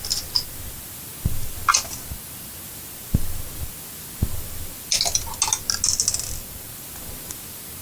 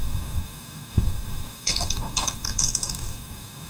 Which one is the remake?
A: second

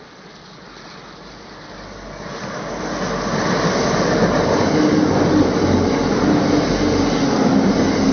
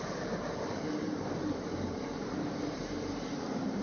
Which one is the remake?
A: second